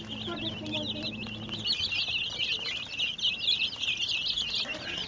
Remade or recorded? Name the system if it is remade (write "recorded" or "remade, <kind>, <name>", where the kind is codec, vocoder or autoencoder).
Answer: recorded